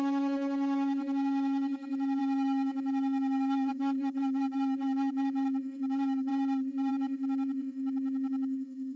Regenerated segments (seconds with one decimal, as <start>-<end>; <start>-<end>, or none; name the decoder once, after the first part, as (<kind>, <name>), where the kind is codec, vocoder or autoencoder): 0.0-6.3 (autoencoder, DAC-VAE); 6.9-9.0